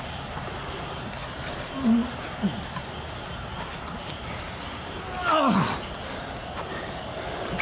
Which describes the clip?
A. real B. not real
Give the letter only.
A